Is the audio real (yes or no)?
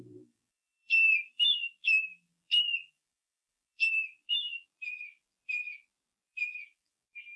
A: no